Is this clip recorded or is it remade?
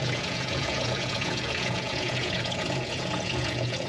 remade